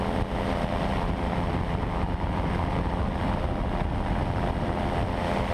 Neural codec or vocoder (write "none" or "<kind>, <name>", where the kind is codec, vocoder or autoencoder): none